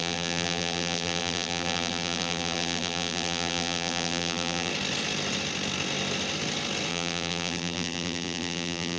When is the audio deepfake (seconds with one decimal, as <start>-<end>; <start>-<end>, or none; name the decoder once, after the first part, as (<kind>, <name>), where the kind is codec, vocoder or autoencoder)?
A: 0.0-4.7 (vocoder, BigVGAN v2); 6.9-9.0